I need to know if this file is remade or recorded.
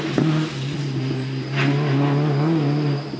recorded